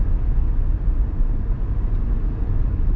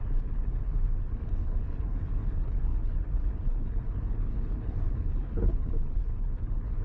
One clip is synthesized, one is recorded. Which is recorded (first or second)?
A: first